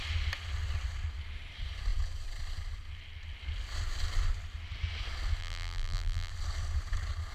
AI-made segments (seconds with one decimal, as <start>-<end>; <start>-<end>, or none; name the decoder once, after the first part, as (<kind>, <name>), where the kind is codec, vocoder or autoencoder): 5.4-6.3 (vocoder, BigVGAN v2)